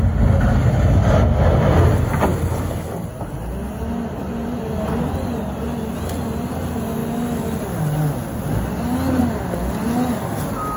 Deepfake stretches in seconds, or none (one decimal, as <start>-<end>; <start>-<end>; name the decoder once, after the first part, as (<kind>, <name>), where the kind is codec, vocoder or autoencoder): none